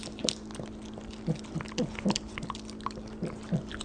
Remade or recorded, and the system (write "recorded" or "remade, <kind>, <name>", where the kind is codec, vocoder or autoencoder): recorded